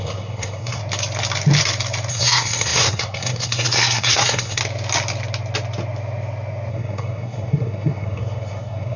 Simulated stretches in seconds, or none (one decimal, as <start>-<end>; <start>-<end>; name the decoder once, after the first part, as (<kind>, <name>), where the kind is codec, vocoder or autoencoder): 0.0-0.8 (codec, SNAC); 2.1-4.6; 6.7-9.0